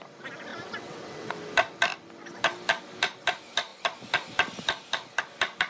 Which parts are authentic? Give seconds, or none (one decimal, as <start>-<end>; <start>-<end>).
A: 0.0-0.5; 1.3-5.7